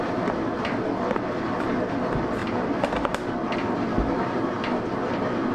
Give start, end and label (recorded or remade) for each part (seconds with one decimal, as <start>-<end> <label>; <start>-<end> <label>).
0.0-5.5 recorded